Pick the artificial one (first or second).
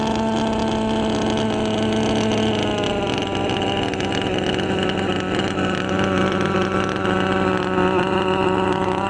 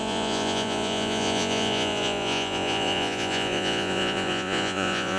second